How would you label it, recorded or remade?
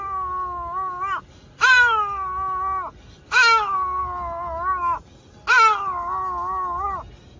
recorded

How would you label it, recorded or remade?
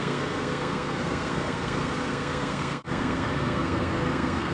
remade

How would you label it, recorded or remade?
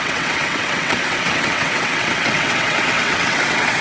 remade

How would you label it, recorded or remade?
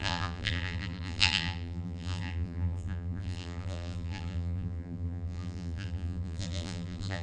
remade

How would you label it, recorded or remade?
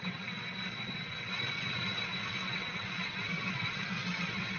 remade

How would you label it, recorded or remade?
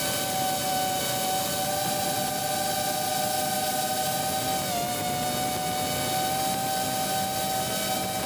recorded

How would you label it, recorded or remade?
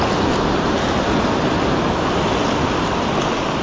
recorded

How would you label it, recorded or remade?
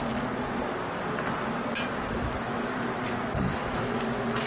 recorded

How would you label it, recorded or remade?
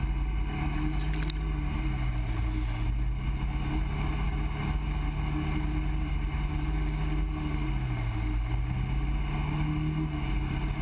recorded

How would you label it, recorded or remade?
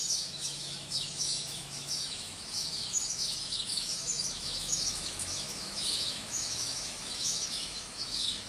remade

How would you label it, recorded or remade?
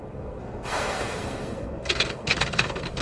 remade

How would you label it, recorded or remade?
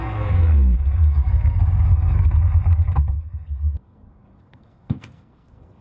remade